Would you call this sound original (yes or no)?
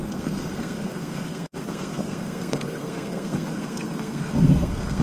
no